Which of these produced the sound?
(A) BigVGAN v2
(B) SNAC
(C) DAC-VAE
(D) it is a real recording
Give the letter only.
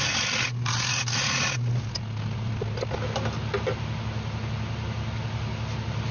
D